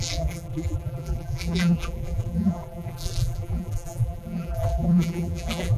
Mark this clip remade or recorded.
remade